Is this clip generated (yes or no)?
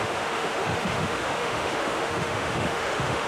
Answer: yes